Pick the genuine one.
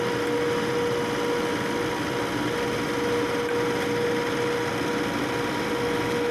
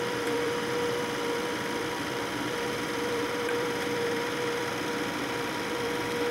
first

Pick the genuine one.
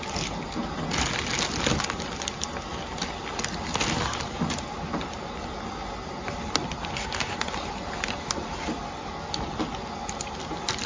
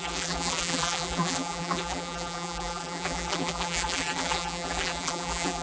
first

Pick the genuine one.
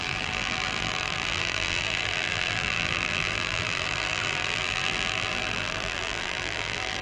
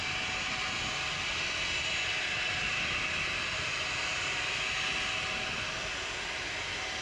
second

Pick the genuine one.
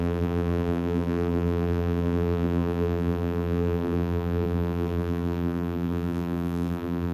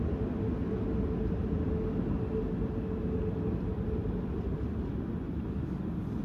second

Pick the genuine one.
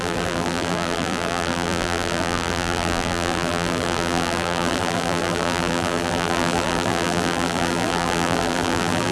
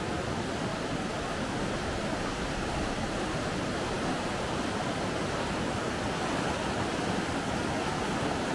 second